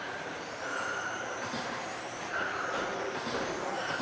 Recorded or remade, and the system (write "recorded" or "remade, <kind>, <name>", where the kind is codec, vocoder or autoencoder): remade, vocoder, BigVGAN v2